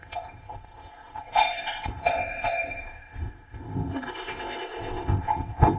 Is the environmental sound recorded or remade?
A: remade